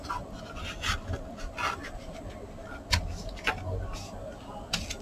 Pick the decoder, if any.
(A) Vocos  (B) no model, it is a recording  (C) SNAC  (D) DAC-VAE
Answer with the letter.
B